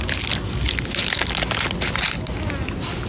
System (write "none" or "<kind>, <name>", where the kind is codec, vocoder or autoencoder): none